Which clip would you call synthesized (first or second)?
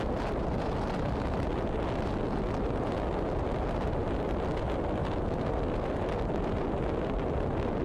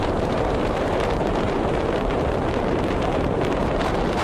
second